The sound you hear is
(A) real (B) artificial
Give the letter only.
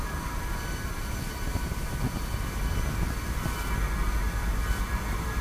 A